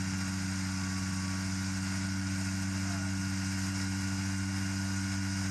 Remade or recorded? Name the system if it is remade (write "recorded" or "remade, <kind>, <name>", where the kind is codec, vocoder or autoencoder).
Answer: recorded